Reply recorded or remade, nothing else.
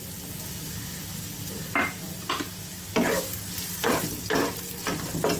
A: recorded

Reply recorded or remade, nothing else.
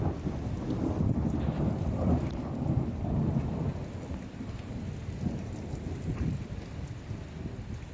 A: recorded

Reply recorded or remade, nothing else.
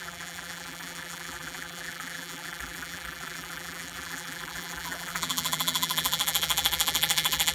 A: remade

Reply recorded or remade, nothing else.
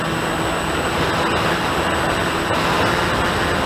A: recorded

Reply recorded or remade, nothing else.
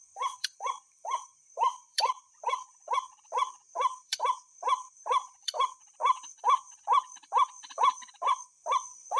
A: remade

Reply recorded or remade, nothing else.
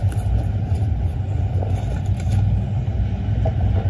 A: recorded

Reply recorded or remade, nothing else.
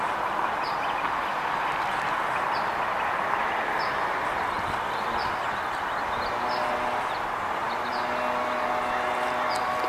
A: recorded